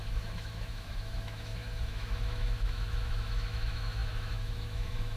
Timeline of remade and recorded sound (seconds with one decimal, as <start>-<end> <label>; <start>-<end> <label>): 0.0-5.2 remade